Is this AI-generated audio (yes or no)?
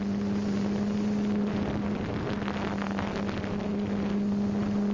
no